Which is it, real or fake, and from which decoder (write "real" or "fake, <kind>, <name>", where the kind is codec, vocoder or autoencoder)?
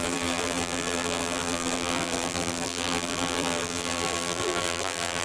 fake, vocoder, BigVGAN v2